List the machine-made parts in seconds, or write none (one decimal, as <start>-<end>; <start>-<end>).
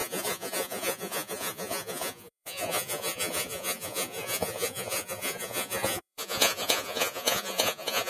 0.0-8.1